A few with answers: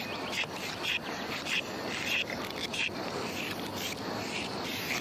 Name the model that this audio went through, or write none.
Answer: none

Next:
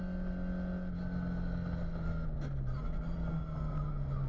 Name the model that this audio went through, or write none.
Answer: none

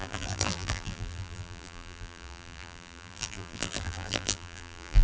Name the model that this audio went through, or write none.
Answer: vocoder, BigVGAN v2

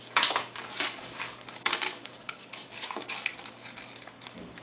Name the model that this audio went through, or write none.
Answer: codec, DAC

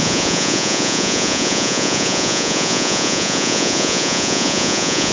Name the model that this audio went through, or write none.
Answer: vocoder, Vocos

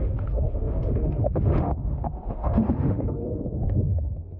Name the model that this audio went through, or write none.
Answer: autoencoder, DAC-VAE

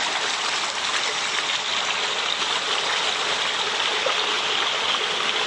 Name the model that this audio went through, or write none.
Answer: none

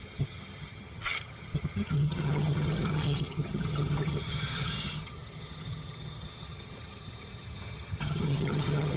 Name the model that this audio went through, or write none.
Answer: vocoder, HiFi-GAN